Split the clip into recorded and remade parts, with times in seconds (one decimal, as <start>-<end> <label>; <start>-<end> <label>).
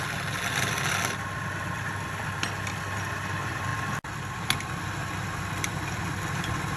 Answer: 0.0-6.8 recorded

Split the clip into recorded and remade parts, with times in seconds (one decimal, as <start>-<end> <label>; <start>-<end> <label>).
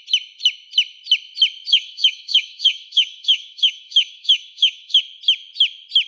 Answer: 0.0-1.7 recorded; 1.7-5.0 remade; 5.0-6.1 recorded